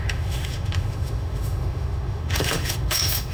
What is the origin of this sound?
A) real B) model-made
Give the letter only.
B